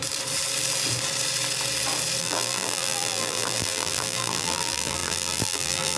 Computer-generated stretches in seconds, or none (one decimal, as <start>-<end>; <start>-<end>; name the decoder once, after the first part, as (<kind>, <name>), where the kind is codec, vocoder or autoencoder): 2.2-6.0 (vocoder, BigVGAN v2)